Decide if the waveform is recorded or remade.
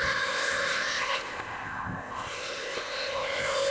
remade